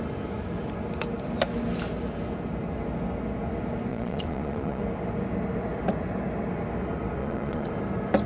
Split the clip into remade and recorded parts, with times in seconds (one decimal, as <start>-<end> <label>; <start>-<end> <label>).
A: 0.0-3.9 recorded; 3.9-4.8 remade; 4.8-7.2 recorded; 7.2-7.7 remade; 7.7-8.3 recorded